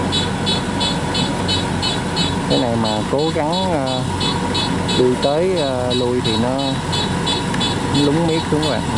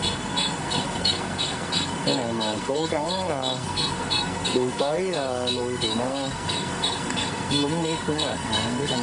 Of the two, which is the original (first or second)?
first